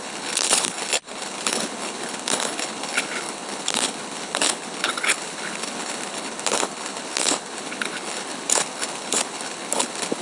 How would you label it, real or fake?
fake